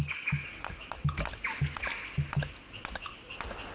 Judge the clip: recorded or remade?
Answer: recorded